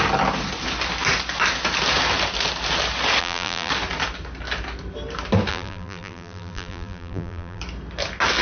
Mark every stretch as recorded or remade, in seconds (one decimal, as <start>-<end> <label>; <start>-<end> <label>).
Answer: 0.0-3.2 recorded; 3.2-3.7 remade; 3.7-5.5 recorded; 5.5-7.6 remade; 7.6-8.4 recorded